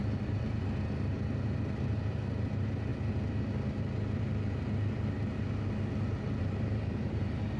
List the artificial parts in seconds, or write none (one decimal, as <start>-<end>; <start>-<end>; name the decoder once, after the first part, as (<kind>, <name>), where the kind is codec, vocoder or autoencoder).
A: 0.0-2.9 (vocoder, BigVGAN v2); 6.4-7.6